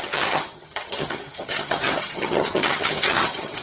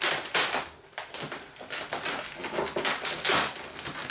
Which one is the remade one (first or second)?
first